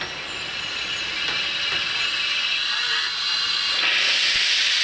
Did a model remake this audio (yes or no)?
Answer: no